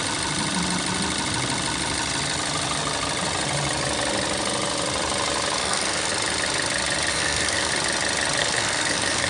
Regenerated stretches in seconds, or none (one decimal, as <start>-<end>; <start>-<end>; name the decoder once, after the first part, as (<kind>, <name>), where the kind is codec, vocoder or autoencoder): 5.6-6.1 (codec, SNAC); 7.1-7.7; 8.4-9.3